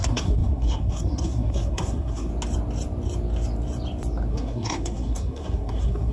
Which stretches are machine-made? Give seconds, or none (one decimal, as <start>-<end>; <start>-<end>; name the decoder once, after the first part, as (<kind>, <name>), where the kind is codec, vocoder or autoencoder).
0.0-2.3 (codec, SNAC); 4.3-6.1